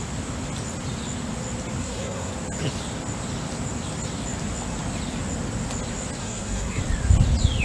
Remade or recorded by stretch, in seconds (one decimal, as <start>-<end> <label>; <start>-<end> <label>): 0.0-1.8 recorded; 1.8-2.3 remade; 2.3-6.2 recorded; 6.2-6.8 remade; 6.8-7.6 recorded